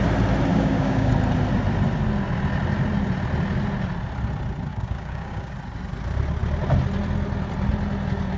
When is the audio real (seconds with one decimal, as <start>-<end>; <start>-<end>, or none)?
0.0-0.5; 1.1-4.7; 5.5-8.4